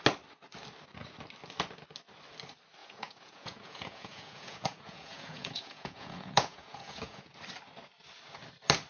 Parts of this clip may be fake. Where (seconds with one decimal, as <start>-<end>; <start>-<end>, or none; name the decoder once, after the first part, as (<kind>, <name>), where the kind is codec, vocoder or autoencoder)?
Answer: 2.8-7.3 (vocoder, Vocos)